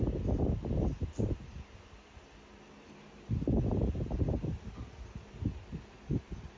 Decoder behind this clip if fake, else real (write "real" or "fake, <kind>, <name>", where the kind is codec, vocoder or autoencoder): real